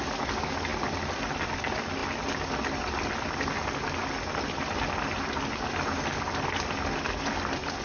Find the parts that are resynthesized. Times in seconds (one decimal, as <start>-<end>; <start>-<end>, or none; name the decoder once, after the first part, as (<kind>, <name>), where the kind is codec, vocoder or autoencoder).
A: none